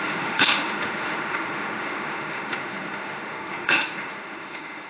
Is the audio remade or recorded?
remade